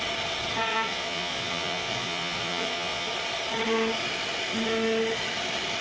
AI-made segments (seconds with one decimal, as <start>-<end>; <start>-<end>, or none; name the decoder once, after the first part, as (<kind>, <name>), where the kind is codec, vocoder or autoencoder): 0.7-3.1 (vocoder, Vocos)